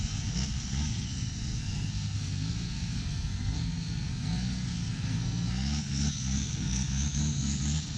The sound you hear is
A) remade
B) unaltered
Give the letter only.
A